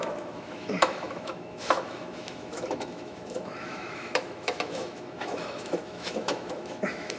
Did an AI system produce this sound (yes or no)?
yes